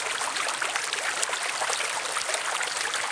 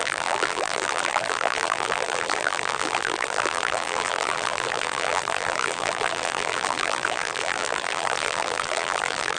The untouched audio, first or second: first